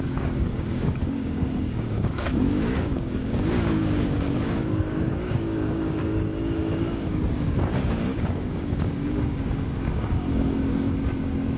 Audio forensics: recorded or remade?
remade